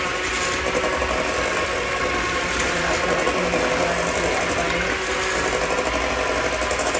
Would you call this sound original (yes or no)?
yes